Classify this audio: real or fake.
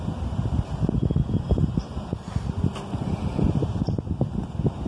real